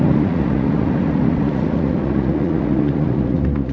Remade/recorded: remade